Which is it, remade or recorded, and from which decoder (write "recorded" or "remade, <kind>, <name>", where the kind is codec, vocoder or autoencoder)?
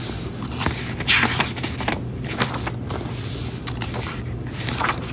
recorded